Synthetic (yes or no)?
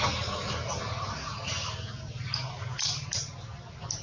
no